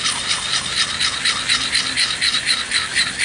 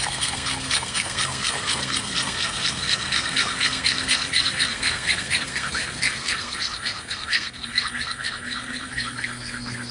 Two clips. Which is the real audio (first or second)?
first